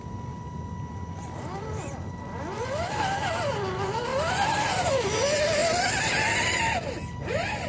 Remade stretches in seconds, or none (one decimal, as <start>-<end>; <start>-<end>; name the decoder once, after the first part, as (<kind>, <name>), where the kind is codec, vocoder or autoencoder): 4.1-4.9 (vocoder, BigVGAN v2); 5.6-6.7